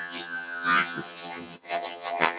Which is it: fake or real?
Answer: fake